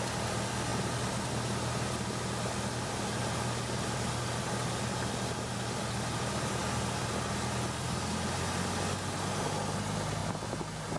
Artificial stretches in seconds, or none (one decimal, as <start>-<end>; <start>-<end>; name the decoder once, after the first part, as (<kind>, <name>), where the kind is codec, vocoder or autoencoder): none